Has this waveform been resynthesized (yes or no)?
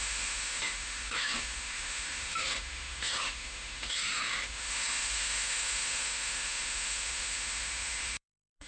yes